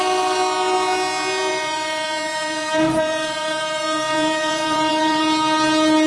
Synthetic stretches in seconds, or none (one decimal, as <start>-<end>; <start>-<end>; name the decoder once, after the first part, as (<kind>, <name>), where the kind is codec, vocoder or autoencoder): 1.5-5.2 (vocoder, Vocos)